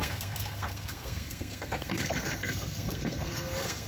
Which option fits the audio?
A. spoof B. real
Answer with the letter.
A